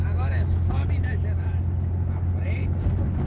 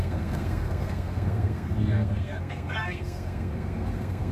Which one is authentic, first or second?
first